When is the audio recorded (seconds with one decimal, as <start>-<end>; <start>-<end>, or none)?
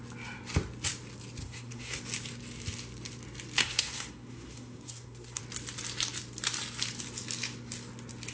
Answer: 0.0-1.4; 2.0-3.6; 5.4-8.3